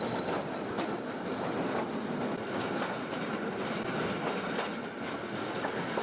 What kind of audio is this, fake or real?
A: real